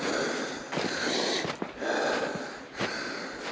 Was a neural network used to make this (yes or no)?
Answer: no